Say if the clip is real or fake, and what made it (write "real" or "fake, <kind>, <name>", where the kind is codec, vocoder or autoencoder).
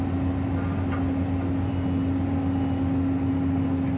real